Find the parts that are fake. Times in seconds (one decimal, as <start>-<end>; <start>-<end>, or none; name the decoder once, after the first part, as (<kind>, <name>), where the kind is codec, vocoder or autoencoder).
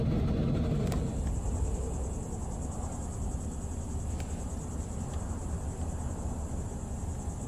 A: none